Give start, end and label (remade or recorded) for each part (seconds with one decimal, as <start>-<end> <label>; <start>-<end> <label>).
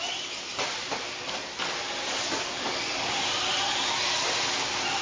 0.0-0.5 recorded; 0.5-3.5 remade; 3.5-5.0 recorded